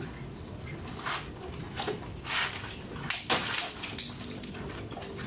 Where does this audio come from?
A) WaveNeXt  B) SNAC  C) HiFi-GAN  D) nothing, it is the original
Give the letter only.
D